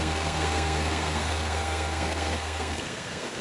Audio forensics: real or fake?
fake